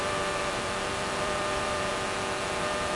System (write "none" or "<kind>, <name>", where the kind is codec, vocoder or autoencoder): vocoder, BigVGAN v2